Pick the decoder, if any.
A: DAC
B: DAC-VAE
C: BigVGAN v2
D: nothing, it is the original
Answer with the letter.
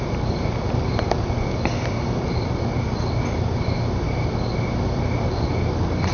D